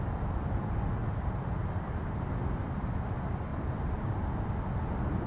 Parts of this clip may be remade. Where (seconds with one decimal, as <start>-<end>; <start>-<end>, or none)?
1.0-2.3; 3.5-4.5